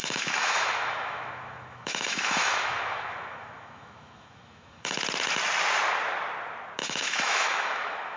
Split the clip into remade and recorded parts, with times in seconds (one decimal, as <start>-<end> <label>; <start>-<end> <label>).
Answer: 0.0-4.9 remade; 4.9-6.8 recorded; 6.8-8.2 remade